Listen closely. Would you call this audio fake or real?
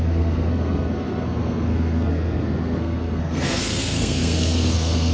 fake